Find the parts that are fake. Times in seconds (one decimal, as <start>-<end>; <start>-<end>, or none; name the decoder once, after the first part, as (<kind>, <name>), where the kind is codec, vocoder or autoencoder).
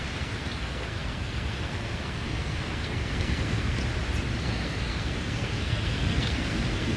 0.0-3.8 (codec, SNAC); 4.4-7.0